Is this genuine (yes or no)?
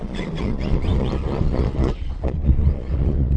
no